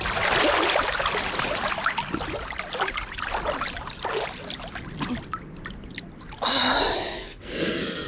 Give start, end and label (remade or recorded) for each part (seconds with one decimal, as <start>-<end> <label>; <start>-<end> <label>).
0.0-7.1 recorded; 7.1-8.1 remade